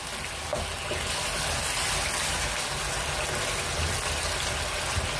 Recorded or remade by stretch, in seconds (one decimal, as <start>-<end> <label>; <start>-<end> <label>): 0.0-5.2 recorded